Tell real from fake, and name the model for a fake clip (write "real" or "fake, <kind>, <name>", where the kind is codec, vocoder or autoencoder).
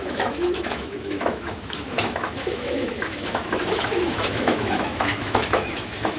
fake, autoencoder, DAC-VAE